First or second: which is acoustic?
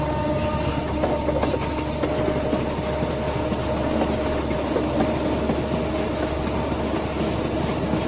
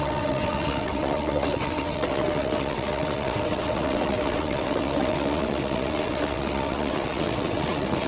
first